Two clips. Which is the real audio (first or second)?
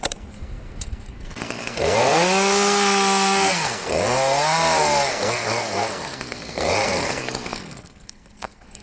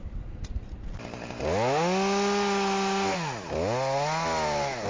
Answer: second